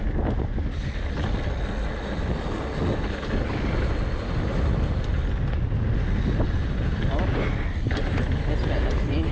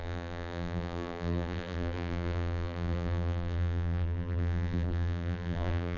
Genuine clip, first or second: first